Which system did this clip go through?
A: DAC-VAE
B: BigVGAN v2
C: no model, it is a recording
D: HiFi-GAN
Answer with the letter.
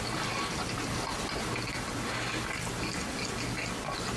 C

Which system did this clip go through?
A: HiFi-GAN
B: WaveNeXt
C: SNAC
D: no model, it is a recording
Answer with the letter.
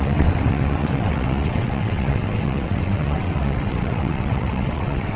B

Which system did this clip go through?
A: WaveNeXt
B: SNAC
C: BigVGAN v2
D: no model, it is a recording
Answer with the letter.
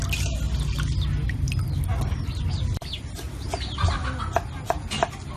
D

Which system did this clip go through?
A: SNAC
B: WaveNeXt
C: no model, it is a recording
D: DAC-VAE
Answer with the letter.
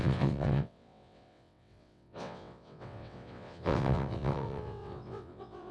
B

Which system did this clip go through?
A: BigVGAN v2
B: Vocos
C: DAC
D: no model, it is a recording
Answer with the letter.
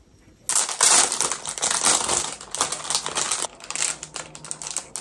D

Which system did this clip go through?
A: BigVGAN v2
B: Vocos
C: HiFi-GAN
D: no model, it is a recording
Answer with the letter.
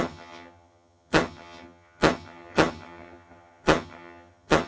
C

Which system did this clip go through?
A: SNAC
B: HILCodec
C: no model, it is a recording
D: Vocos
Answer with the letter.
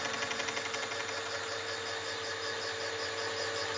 C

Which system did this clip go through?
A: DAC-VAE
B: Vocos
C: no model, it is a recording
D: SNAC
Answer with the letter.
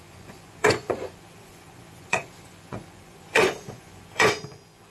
B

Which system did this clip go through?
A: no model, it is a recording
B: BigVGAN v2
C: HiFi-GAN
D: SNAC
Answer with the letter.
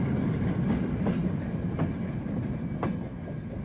A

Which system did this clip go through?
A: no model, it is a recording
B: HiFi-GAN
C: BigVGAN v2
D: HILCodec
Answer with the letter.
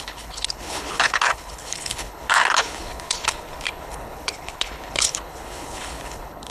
D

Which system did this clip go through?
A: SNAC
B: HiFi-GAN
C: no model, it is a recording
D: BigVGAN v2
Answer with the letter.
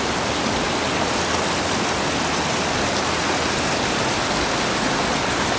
C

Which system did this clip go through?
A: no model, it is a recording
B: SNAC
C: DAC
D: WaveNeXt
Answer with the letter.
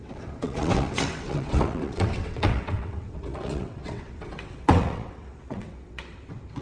D